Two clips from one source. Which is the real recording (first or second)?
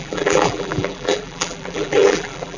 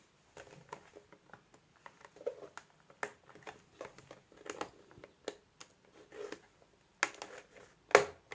second